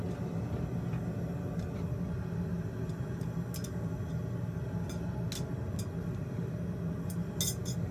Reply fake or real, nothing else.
real